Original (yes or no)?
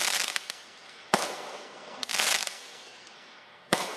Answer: no